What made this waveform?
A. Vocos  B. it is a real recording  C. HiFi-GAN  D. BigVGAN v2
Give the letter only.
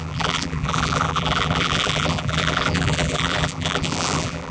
D